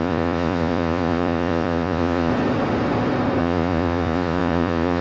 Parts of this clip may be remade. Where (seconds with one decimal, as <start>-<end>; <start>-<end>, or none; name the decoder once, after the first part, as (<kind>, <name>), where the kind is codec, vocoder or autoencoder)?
0.0-2.3 (vocoder, Vocos); 3.4-5.0